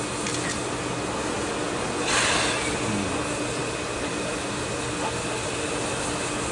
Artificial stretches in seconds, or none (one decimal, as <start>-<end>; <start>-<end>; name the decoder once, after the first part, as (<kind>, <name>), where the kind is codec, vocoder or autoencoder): none